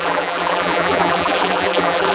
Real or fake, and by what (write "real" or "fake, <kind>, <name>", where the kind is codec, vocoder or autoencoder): fake, vocoder, BigVGAN v2